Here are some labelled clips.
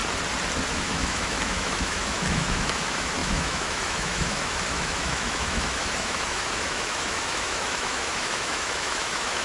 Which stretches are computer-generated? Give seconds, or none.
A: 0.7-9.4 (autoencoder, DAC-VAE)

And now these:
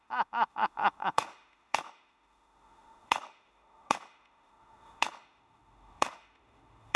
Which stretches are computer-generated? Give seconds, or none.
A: 0.0-7.0 (autoencoder, DAC-VAE)

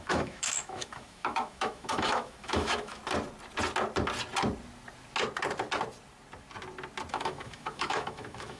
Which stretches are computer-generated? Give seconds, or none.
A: 0.0-3.0 (autoencoder, DAC-VAE); 7.1-8.6

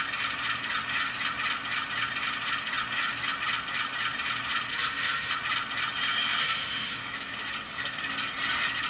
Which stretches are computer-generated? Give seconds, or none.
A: 4.7-5.3 (autoencoder, DAC-VAE); 6.4-7.0

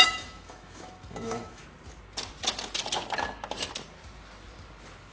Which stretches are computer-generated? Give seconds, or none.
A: 0.0-1.6 (autoencoder, DAC-VAE)

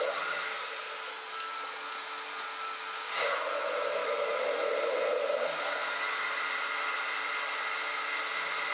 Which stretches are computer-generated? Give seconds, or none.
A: 4.0-4.5 (autoencoder, DAC-VAE)